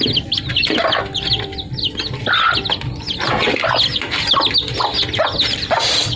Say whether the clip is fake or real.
real